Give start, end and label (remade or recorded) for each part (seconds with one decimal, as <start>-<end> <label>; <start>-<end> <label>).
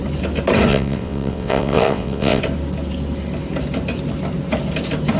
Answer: 0.0-0.7 recorded; 0.7-2.4 remade; 2.4-5.2 recorded